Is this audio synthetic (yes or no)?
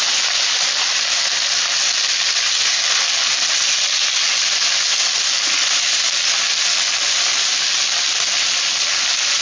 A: no